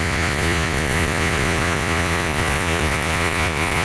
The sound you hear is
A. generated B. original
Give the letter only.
A